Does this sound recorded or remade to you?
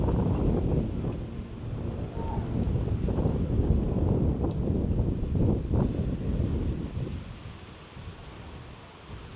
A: recorded